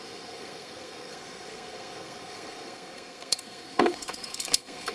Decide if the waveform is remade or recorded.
remade